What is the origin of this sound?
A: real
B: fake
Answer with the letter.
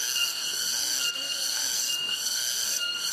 B